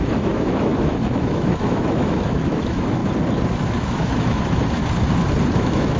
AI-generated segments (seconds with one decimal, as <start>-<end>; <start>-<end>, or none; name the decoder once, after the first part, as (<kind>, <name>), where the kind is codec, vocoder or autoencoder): 0.0-3.0 (autoencoder, DAC-VAE); 3.6-4.8; 5.5-6.0